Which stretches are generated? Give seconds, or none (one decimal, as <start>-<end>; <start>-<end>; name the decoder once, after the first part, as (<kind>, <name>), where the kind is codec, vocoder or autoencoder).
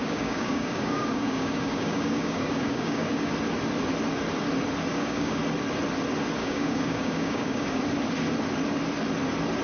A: 0.0-3.3 (codec, DAC); 4.9-5.4; 6.4-7.8